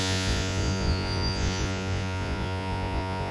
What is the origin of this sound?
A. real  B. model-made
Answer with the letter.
B